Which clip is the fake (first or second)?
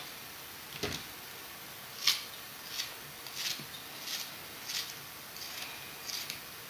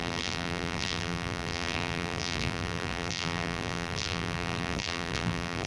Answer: second